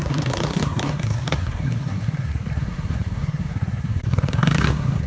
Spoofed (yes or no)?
yes